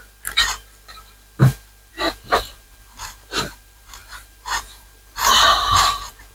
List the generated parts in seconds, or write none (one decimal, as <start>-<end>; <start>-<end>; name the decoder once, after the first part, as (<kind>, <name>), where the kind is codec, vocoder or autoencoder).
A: 0.0-6.3 (vocoder, BigVGAN v2)